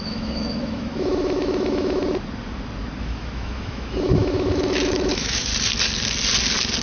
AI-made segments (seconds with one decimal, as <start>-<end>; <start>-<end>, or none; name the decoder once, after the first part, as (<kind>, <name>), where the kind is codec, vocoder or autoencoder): 0.0-2.0 (autoencoder, DAC-VAE); 3.0-5.5